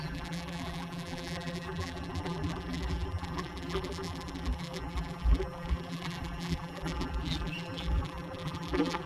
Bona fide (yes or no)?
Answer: no